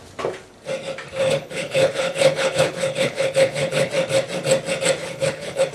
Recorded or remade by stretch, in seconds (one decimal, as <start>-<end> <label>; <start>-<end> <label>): 0.0-1.2 recorded; 1.2-3.9 remade; 3.9-5.0 recorded; 5.0-5.7 remade